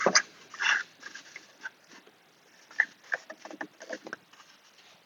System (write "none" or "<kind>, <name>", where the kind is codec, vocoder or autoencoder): none